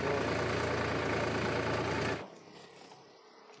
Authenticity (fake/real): real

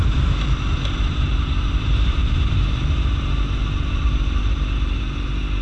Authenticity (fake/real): fake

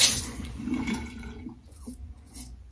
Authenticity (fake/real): fake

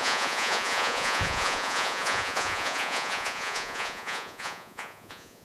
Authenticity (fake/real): fake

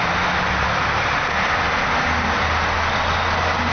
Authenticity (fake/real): real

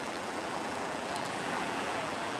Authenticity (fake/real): fake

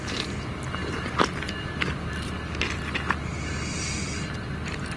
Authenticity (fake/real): real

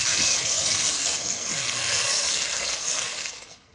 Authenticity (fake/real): fake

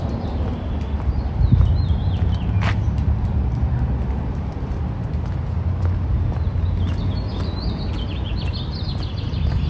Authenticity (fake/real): real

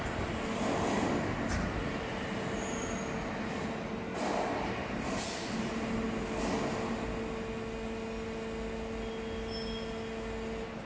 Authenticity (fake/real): real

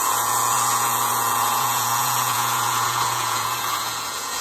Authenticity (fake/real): fake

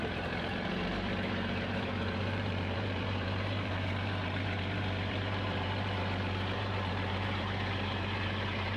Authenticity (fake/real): fake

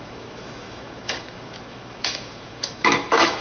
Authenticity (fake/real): fake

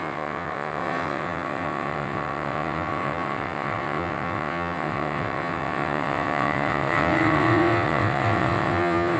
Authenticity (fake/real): fake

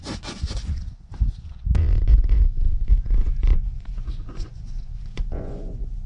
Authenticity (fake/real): fake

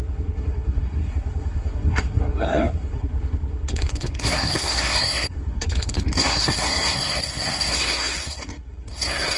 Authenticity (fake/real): fake